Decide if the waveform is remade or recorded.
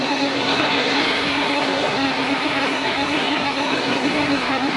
remade